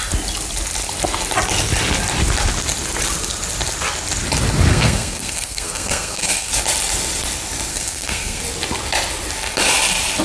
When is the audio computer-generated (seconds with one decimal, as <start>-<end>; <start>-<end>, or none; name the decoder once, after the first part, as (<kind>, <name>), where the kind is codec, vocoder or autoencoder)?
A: 4.7-6.5 (codec, SNAC); 7.7-8.4